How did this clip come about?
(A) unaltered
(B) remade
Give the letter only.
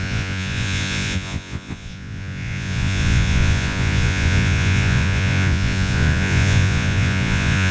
B